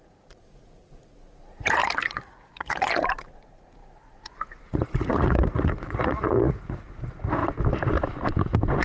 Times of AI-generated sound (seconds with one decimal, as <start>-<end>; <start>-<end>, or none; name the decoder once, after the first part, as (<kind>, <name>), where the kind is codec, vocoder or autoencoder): 0.0-7.4 (vocoder, Vocos)